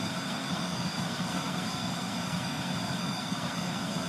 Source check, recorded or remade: remade